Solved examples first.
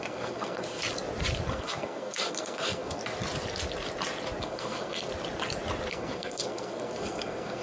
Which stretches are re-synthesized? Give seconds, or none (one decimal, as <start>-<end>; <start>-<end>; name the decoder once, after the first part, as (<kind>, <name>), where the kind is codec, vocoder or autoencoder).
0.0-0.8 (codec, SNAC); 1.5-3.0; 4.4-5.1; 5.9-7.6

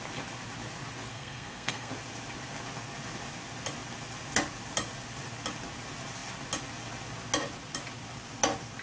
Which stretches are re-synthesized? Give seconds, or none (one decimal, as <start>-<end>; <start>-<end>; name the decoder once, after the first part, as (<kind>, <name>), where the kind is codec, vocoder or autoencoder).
1.1-1.9 (codec, SNAC)

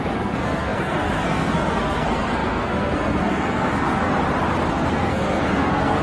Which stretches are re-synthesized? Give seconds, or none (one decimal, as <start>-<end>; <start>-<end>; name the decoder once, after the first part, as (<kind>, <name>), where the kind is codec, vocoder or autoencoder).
0.0-4.1 (codec, SNAC); 4.7-6.0

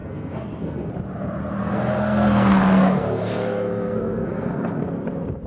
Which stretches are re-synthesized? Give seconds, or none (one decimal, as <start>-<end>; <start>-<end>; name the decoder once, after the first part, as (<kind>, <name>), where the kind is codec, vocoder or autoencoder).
0.0-0.9 (codec, SNAC); 1.6-4.9

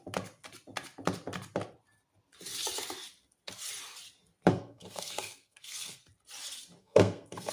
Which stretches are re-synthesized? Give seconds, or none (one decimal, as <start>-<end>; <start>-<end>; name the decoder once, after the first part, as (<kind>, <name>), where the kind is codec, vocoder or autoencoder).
4.5-6.1 (codec, SNAC); 6.8-7.5

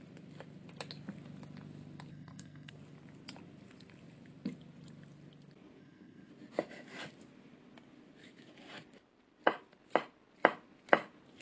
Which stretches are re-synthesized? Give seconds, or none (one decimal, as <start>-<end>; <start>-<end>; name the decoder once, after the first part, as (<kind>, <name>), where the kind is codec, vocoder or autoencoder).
2.1-2.7 (codec, SNAC); 5.8-6.3